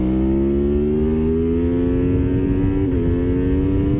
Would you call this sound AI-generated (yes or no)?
no